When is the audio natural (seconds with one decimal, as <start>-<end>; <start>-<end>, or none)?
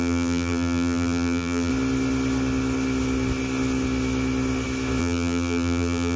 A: 1.7-5.0